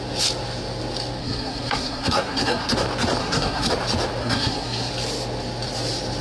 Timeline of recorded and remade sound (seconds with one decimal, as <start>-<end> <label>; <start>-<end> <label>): 0.0-1.2 recorded; 1.2-2.7 remade; 2.7-3.2 recorded; 3.2-3.7 remade; 3.7-4.2 recorded; 4.2-4.9 remade; 4.9-6.2 recorded